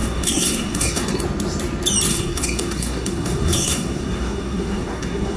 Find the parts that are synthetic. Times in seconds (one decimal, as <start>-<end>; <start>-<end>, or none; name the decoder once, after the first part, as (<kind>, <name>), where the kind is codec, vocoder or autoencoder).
0.0-1.2 (codec, SNAC); 2.1-5.4